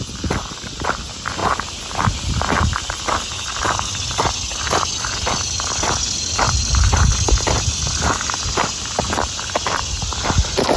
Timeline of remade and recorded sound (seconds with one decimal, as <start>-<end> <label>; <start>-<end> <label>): 0.0-10.8 recorded